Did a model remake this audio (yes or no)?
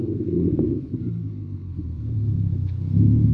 yes